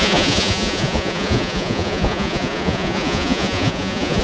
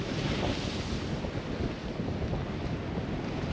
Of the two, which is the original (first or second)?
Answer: second